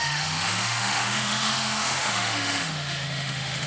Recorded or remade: remade